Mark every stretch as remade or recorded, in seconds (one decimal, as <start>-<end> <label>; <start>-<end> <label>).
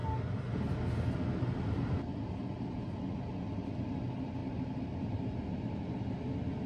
0.0-4.4 recorded; 4.4-5.7 remade; 5.7-6.7 recorded